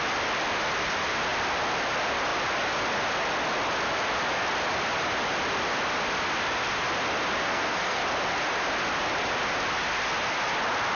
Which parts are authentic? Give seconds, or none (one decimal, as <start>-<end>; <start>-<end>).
0.0-7.4; 8.0-10.9